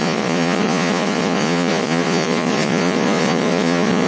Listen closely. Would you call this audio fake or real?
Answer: fake